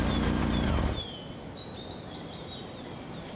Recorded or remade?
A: recorded